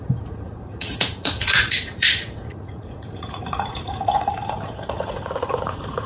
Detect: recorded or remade remade